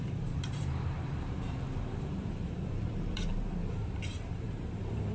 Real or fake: fake